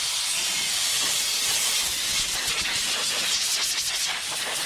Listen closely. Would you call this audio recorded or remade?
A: recorded